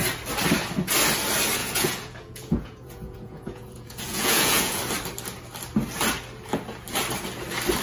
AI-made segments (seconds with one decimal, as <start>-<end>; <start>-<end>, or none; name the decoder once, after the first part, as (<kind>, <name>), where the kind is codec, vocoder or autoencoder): 1.6-4.8 (vocoder, Vocos)